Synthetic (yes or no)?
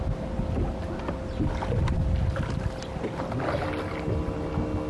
no